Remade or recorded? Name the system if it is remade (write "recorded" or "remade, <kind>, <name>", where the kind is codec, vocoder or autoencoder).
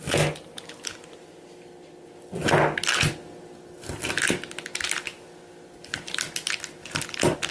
recorded